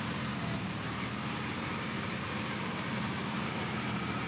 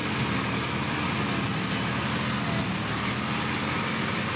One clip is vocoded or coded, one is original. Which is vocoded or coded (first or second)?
first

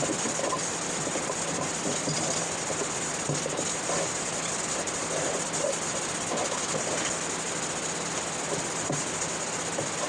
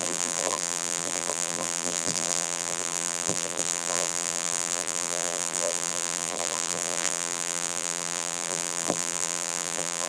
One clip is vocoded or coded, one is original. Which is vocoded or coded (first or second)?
second